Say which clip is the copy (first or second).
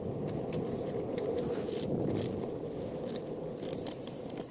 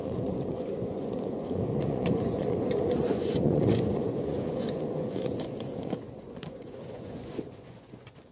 second